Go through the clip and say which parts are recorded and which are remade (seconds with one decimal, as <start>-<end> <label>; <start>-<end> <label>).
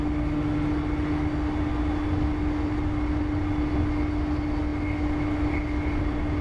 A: 0.0-6.4 recorded